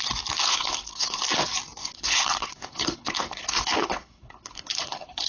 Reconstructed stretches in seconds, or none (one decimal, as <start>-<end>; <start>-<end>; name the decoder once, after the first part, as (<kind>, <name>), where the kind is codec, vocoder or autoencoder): 0.4-1.2 (codec, HILCodec); 1.8-5.3